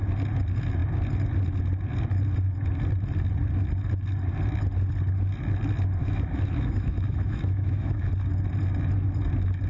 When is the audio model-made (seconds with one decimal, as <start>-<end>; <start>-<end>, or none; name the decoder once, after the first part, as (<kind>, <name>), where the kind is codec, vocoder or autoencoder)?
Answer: 6.0-8.1 (autoencoder, DAC-VAE)